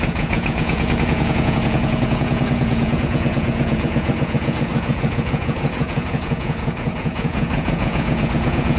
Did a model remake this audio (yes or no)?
yes